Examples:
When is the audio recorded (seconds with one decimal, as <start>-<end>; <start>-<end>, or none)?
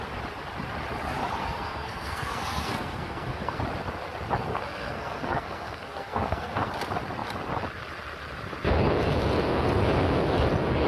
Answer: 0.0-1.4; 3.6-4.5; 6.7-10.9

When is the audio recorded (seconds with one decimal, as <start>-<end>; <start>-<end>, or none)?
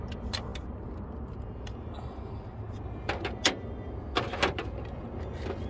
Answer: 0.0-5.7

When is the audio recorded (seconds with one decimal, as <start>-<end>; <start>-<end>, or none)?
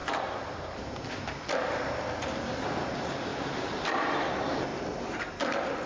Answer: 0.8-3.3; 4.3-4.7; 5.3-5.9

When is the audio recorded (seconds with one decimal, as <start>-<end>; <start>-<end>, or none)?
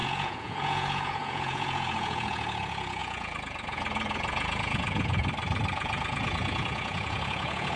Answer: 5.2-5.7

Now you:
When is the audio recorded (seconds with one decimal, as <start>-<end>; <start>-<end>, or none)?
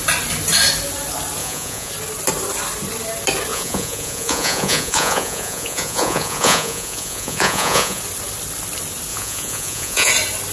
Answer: 0.0-1.4; 1.9-3.5; 8.0-9.1; 10.1-10.5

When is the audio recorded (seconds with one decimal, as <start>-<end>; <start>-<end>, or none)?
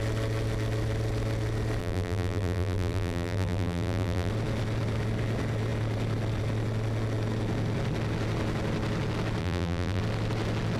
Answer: 0.0-1.8; 4.3-9.4; 10.0-10.8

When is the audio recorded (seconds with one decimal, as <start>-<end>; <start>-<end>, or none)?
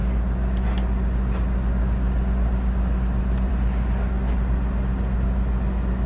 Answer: 0.0-6.1